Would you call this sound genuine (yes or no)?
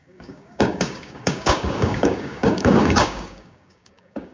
no